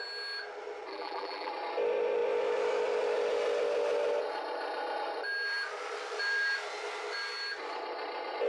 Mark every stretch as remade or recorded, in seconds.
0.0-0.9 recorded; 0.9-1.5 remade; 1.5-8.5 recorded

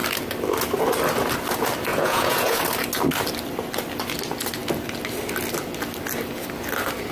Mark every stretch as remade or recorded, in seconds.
0.0-1.9 recorded; 1.9-2.6 remade; 2.6-7.1 recorded

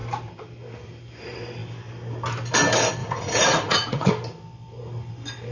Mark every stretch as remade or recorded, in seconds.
0.0-3.0 recorded; 3.0-4.1 remade; 4.1-5.5 recorded

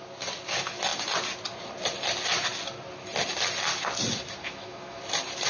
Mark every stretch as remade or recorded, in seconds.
0.0-4.4 recorded; 4.4-5.0 remade; 5.0-5.5 recorded

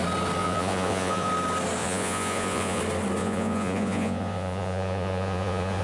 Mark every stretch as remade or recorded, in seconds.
0.0-0.4 recorded; 0.4-1.3 remade; 1.3-1.8 recorded; 1.8-2.8 remade; 2.8-3.2 recorded; 3.2-5.8 remade

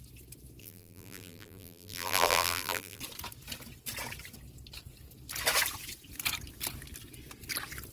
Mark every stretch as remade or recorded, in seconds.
0.0-0.6 recorded; 0.6-3.0 remade; 3.0-7.9 recorded